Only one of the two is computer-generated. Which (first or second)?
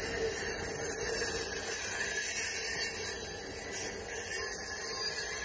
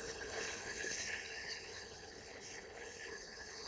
second